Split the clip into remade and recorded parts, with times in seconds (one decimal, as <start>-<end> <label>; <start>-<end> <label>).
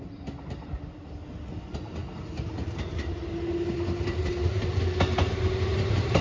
0.0-6.2 recorded